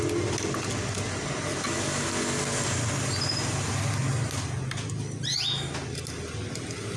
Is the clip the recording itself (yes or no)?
yes